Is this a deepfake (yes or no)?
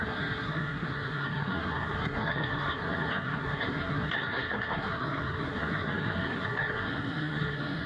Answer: yes